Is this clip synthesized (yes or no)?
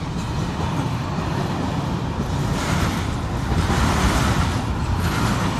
no